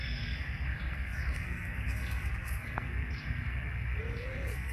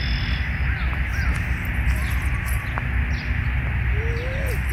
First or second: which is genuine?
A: second